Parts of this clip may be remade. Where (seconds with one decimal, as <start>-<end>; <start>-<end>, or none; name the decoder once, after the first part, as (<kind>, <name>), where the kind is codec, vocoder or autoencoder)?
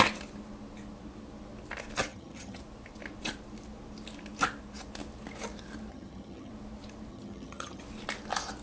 2.1-2.6 (vocoder, HiFi-GAN); 5.9-6.5; 7.1-7.8